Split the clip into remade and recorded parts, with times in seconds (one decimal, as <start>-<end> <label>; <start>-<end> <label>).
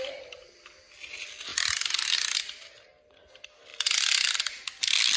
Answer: 0.0-5.2 recorded